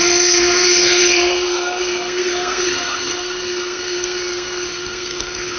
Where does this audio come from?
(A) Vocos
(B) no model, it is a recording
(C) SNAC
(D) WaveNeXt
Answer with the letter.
C